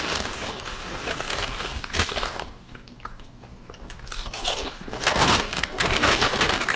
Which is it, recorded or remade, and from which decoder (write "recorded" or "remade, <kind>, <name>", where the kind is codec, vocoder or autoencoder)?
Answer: remade, codec, DAC